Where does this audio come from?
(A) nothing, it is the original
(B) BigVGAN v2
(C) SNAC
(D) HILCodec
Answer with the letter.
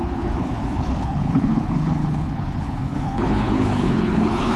D